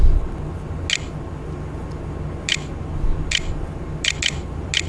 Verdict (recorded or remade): recorded